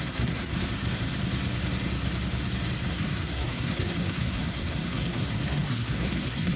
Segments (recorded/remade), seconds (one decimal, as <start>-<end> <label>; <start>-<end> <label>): 0.0-0.5 remade; 0.5-2.9 recorded; 2.9-6.6 remade